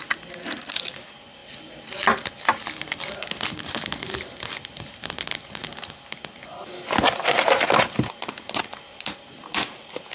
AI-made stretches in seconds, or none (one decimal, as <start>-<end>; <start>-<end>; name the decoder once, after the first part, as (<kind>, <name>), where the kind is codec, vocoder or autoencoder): none